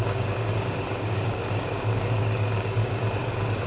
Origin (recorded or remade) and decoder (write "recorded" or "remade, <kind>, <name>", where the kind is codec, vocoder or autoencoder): remade, codec, DAC